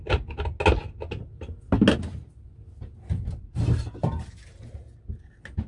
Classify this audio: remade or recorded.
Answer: recorded